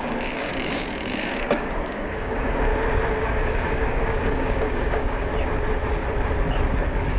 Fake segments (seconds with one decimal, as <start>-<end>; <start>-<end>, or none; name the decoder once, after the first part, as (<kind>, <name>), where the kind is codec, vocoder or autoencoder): 0.0-2.7 (codec, DAC); 3.4-5.3; 6.7-7.2